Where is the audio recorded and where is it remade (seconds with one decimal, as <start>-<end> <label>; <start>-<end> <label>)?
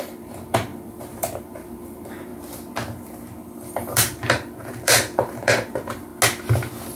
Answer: 0.0-2.3 remade; 2.3-3.9 recorded; 3.9-6.1 remade; 6.1-7.0 recorded